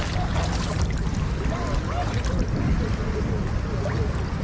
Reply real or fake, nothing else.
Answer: real